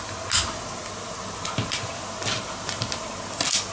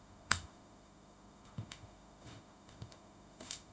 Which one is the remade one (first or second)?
second